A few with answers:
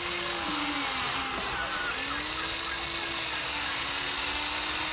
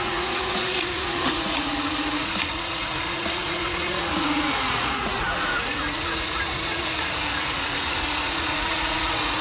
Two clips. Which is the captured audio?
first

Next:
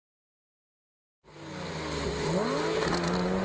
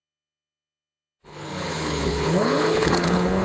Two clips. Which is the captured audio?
first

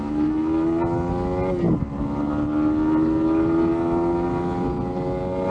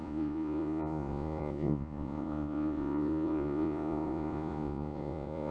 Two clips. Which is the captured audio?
first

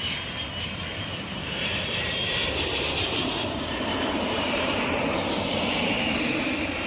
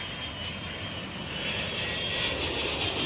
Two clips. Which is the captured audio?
second